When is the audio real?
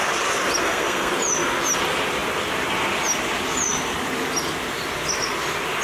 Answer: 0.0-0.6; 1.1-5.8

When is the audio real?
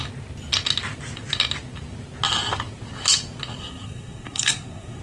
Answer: 0.0-3.6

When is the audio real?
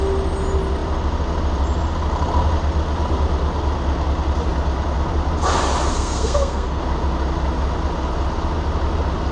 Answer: 0.0-5.9; 6.8-9.3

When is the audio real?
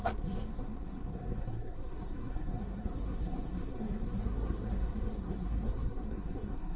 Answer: none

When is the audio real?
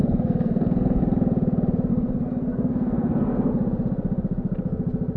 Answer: 1.0-1.9; 3.5-5.2